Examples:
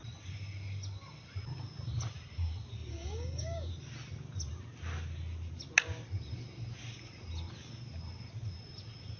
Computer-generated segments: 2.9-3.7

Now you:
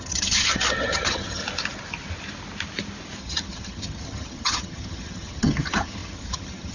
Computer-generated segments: 0.0-1.4; 3.2-6.7